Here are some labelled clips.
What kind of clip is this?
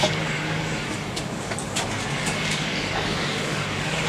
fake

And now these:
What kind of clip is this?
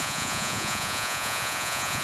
fake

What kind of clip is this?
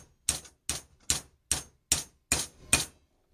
real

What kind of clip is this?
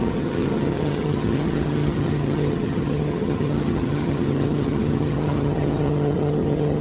fake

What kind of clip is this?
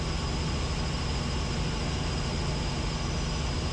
real